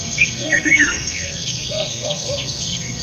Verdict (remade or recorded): remade